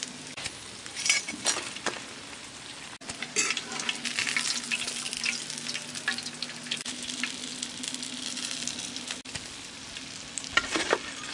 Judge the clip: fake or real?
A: real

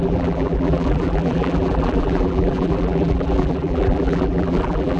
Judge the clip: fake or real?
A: fake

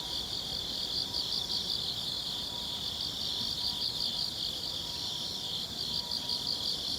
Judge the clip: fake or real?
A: real